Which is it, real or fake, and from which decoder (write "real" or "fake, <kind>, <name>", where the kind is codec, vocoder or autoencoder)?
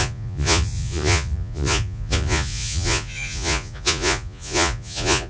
fake, vocoder, Vocos